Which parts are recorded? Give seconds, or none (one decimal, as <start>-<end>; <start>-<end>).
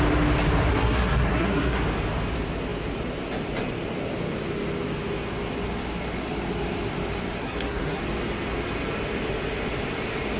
0.0-0.7; 1.8-7.4; 8.0-10.4